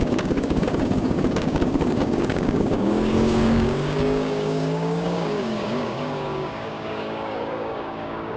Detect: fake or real fake